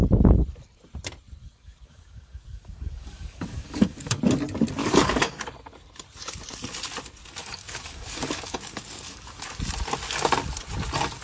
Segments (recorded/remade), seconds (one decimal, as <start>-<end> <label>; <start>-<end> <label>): 0.0-1.4 recorded; 1.4-4.2 remade; 4.2-4.8 recorded; 4.8-5.4 remade; 5.4-7.4 recorded; 7.4-9.5 remade; 9.5-11.2 recorded